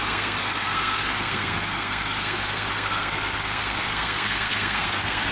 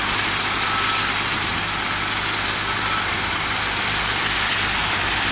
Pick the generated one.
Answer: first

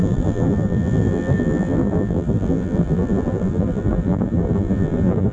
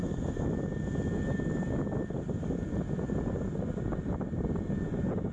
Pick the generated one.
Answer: first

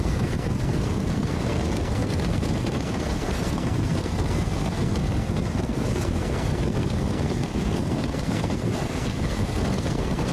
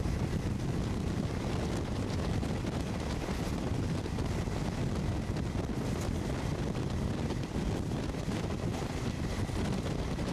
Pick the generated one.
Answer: first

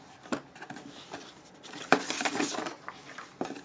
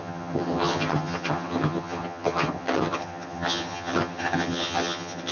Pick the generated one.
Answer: second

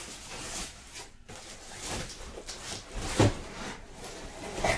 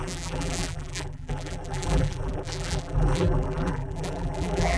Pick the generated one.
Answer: second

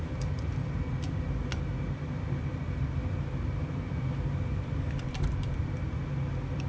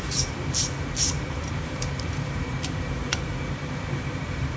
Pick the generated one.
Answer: second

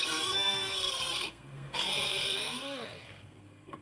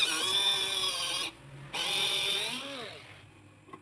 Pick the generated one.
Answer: first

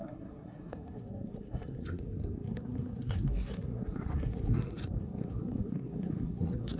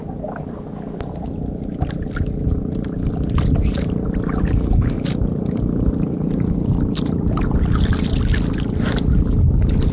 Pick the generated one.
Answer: first